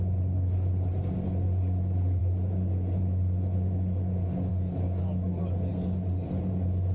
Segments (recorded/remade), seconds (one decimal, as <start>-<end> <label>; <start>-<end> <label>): 0.0-6.9 recorded